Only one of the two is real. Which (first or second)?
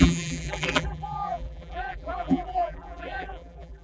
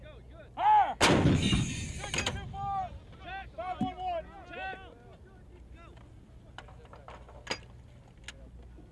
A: second